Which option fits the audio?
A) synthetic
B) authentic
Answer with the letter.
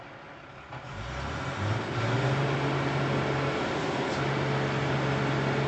B